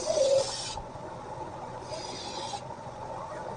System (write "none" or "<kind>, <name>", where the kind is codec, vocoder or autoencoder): vocoder, Vocos